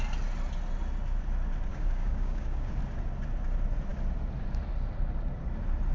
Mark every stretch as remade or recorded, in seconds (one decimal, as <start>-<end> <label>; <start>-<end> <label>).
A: 0.0-1.7 recorded; 1.7-2.8 remade; 2.8-5.9 recorded